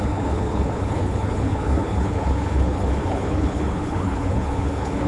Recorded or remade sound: remade